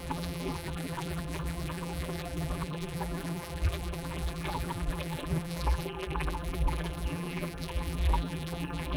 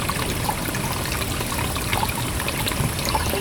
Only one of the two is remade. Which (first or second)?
first